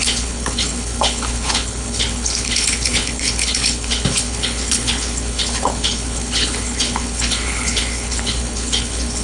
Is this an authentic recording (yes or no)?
no